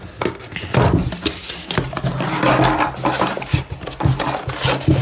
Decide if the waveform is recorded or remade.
recorded